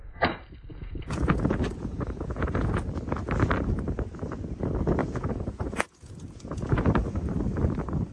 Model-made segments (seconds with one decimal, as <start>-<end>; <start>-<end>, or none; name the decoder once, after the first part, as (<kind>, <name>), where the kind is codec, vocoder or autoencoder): 0.7-2.9 (vocoder, Vocos); 5.0-6.9